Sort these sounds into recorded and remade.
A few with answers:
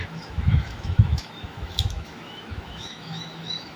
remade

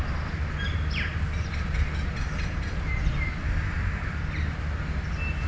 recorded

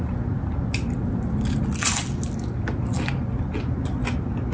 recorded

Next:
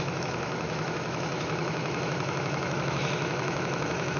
remade